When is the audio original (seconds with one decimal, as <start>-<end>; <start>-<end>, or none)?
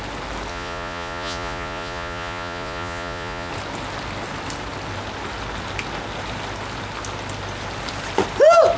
0.0-0.5; 3.5-8.8